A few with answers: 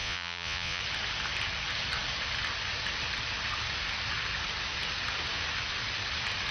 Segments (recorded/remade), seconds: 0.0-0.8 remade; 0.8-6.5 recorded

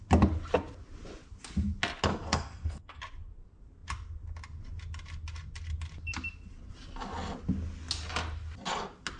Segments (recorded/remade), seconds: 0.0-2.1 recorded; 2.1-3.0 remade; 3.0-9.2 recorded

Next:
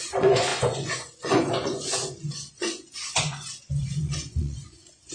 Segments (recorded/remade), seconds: 0.0-5.1 remade